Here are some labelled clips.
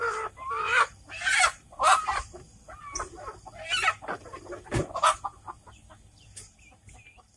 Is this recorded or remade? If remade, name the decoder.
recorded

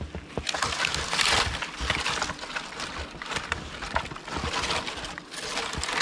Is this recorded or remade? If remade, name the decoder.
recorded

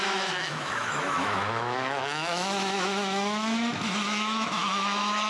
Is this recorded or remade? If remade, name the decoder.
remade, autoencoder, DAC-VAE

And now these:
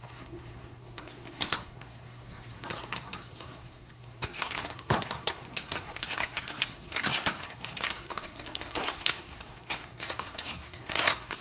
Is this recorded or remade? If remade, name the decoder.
remade, codec, SNAC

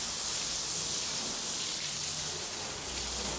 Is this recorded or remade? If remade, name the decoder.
recorded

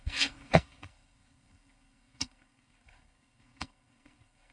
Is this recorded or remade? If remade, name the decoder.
remade, codec, SNAC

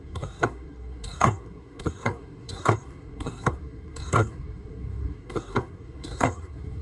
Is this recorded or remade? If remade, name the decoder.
remade, codec, SNAC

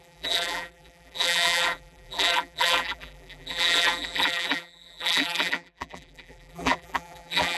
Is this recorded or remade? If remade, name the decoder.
remade, vocoder, BigVGAN v2